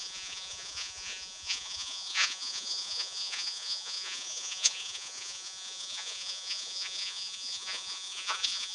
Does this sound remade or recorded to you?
remade